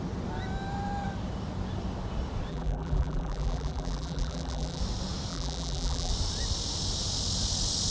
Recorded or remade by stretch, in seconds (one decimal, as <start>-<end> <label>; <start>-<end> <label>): 0.0-2.5 recorded; 2.5-4.8 remade; 4.8-5.3 recorded; 5.3-6.1 remade; 6.1-7.9 recorded